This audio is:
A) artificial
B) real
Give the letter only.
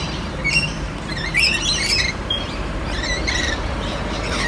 A